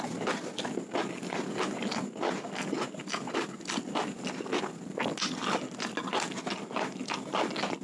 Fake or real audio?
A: real